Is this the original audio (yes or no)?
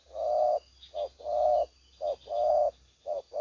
yes